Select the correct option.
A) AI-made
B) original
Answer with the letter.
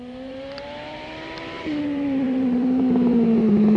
A